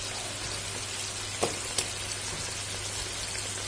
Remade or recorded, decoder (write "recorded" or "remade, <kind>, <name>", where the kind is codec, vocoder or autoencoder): recorded